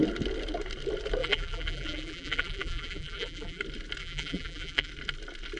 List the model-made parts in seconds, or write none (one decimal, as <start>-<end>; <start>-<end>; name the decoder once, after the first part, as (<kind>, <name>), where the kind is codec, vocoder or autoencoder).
1.2-3.6 (vocoder, BigVGAN v2); 4.0-4.9